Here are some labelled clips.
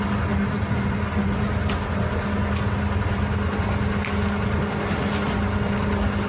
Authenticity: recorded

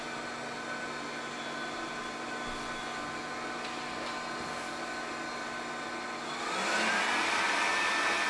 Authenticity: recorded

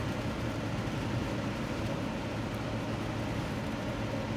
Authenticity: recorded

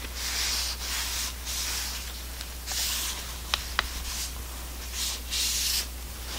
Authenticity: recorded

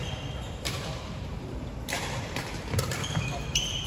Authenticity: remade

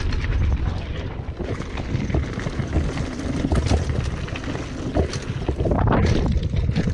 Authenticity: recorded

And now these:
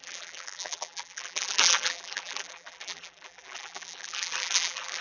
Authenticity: remade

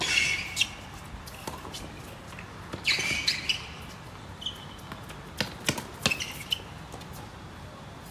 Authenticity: recorded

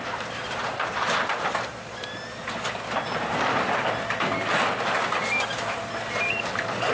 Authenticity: remade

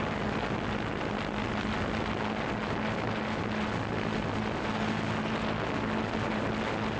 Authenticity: recorded